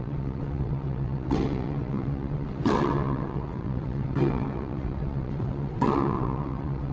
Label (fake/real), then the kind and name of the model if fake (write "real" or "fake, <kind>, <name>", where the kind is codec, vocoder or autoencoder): fake, vocoder, WaveNeXt